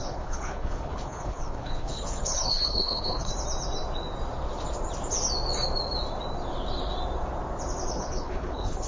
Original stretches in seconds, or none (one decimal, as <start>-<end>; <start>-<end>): 3.3-7.9